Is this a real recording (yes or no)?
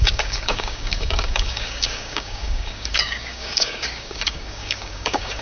no